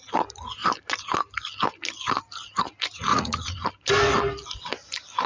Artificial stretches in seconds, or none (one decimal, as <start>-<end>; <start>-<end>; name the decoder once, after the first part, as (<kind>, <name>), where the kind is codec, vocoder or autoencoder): 3.1-3.7 (vocoder, Vocos)